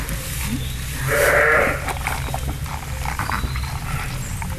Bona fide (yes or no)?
yes